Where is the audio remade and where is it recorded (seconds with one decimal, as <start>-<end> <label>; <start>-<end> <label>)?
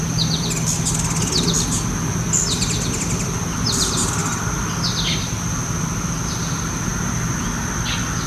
0.0-8.3 recorded